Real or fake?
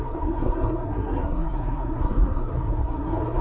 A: fake